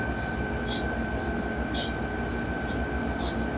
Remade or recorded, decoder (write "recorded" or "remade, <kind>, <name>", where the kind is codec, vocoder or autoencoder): recorded